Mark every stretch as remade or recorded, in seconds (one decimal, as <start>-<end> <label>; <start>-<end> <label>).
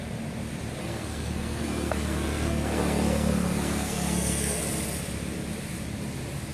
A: 0.0-0.8 recorded; 0.8-4.6 remade; 4.6-6.5 recorded